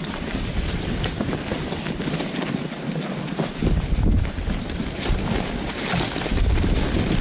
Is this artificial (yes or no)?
yes